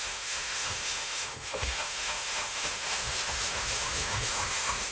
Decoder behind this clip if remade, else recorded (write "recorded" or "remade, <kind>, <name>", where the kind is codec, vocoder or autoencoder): remade, autoencoder, DAC-VAE